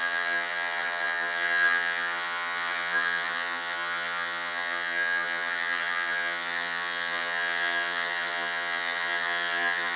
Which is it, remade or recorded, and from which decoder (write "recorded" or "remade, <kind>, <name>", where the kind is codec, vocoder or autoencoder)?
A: remade, vocoder, HiFi-GAN